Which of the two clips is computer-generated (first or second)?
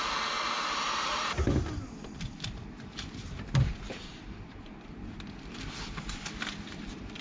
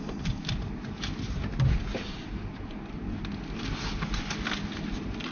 first